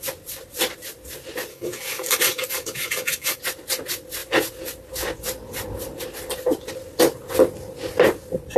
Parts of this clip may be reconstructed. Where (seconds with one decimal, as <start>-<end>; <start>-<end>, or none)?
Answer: 1.5-3.4